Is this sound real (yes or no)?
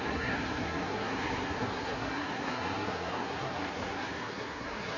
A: no